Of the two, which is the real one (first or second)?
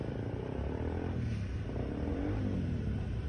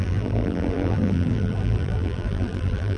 first